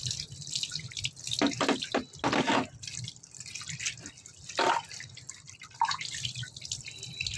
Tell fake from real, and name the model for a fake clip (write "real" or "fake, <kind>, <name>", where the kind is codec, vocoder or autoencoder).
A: real